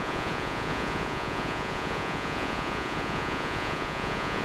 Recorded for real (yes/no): no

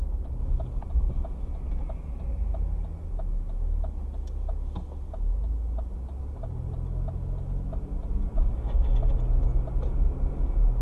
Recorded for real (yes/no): yes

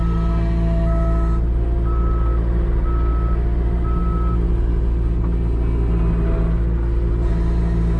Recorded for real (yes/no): yes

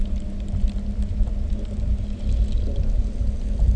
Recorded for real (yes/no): yes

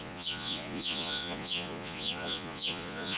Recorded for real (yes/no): no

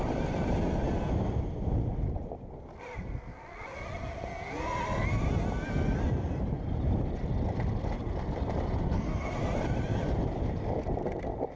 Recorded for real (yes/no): yes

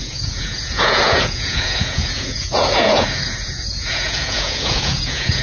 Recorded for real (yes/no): no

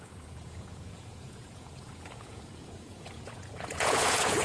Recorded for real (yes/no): no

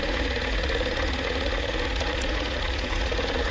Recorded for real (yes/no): no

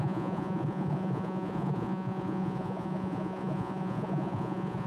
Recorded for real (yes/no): no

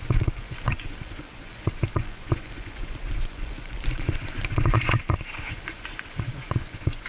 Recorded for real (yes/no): no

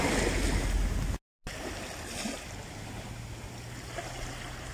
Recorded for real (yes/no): yes